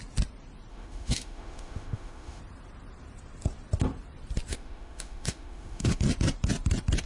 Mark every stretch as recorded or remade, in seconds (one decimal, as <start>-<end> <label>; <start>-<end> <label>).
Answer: 0.0-0.7 recorded; 0.7-2.4 remade; 2.4-4.5 recorded; 4.5-6.0 remade; 6.0-7.1 recorded